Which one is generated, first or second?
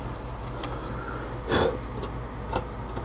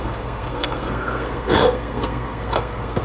second